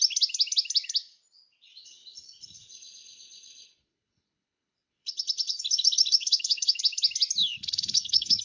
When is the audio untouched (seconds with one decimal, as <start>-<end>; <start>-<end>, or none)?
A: 0.0-1.8; 6.8-7.4